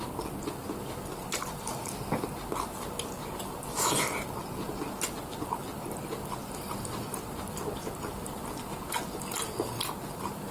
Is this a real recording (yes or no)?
yes